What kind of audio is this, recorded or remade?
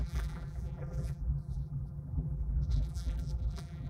remade